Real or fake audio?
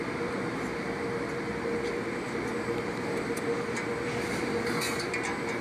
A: real